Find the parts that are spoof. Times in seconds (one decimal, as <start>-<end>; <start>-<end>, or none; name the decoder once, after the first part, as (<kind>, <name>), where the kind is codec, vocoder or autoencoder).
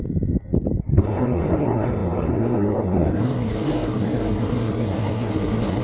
0.8-5.8 (codec, SNAC)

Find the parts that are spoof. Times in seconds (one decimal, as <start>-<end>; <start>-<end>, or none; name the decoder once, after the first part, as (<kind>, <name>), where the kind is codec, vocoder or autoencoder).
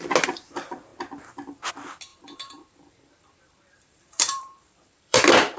2.1-5.6 (vocoder, BigVGAN v2)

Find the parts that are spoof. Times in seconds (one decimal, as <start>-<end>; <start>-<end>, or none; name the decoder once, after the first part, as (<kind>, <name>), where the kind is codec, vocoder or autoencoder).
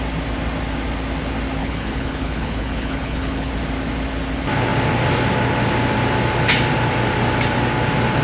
1.6-3.5 (codec, HILCodec)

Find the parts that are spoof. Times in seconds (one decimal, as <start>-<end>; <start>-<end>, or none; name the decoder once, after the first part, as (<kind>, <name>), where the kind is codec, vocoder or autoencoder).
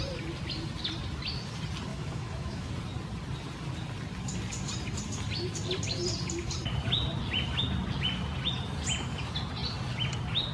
1.9-2.7 (autoencoder, DAC-VAE)